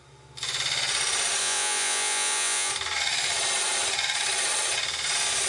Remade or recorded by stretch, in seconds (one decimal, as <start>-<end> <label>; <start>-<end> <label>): 0.0-1.4 recorded; 1.4-2.7 remade; 2.7-5.5 recorded